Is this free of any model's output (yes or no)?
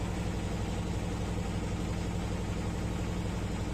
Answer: yes